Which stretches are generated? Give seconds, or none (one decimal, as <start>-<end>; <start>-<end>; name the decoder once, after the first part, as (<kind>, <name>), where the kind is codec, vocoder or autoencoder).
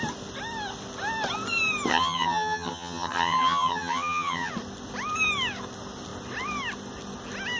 1.9-4.5 (vocoder, HiFi-GAN)